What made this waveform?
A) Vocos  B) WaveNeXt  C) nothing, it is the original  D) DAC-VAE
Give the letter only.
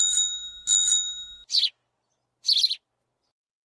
C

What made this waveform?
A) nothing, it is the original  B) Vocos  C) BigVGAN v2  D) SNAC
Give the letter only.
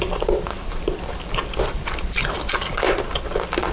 A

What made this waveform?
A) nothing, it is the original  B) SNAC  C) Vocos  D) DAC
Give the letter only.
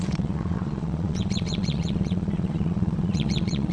C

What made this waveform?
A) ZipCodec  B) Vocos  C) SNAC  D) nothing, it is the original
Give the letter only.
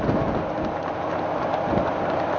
D